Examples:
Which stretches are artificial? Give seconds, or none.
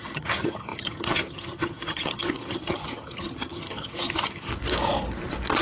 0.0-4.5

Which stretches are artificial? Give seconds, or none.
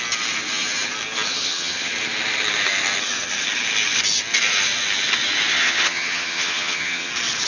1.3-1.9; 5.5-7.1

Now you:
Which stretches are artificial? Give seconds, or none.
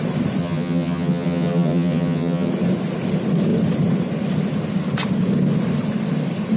0.4-2.5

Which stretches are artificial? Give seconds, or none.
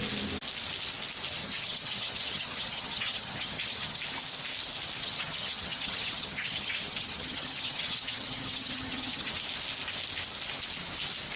1.4-4.0; 5.0-9.3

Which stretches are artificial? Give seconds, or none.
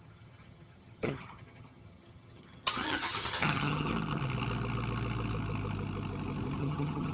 0.0-3.9; 6.6-7.1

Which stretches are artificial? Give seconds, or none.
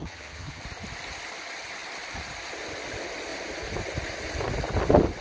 0.0-0.6